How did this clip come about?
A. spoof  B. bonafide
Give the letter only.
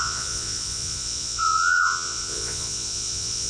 A